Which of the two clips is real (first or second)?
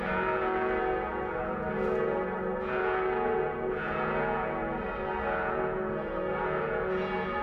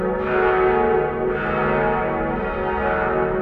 second